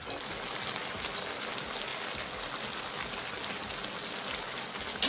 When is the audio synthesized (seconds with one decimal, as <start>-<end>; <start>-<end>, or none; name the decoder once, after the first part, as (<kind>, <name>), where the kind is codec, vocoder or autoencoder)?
none